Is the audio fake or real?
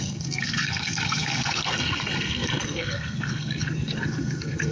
fake